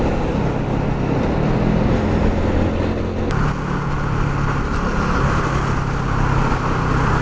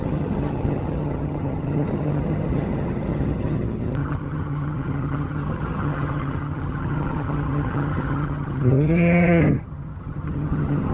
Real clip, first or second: first